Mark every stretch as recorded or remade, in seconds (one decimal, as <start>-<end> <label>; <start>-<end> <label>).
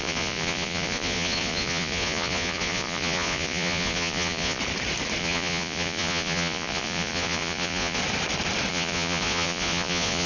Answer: 0.0-4.6 remade; 4.6-5.2 recorded; 5.2-8.0 remade; 8.0-8.7 recorded; 8.7-10.3 remade